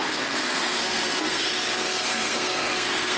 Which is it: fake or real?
fake